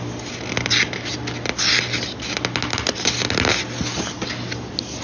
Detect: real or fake real